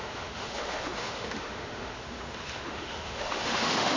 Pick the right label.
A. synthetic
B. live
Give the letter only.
A